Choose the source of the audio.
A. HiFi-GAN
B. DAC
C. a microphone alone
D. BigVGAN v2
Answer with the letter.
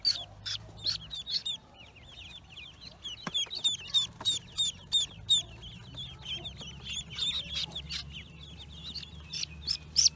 C